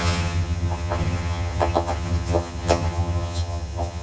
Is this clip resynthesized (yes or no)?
yes